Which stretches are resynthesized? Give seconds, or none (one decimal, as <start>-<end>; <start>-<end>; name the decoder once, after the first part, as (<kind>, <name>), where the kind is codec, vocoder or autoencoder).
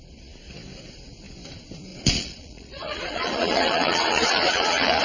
1.9-5.0 (vocoder, Vocos)